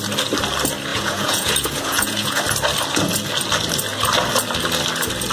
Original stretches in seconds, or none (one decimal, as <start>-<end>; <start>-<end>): 0.0-0.9; 2.4-5.3